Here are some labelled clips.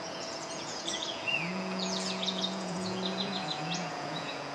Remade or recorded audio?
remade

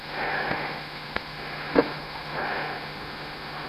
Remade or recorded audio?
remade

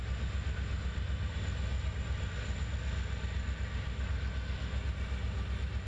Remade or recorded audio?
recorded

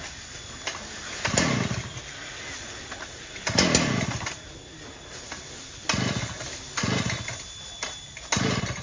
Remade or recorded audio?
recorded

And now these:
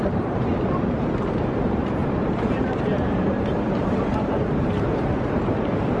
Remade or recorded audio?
remade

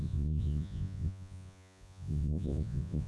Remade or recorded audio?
remade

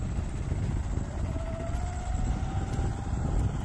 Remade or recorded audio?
recorded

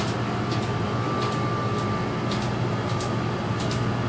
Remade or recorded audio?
recorded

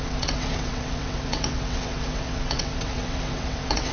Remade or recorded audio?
remade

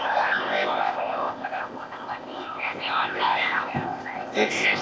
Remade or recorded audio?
remade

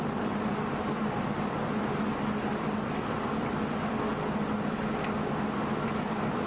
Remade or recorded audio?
recorded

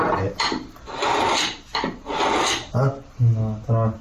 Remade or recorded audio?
recorded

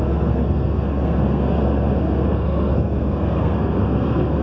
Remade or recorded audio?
remade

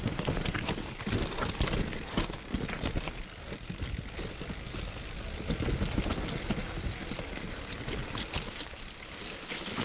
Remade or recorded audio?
recorded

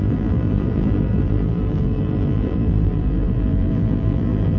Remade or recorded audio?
remade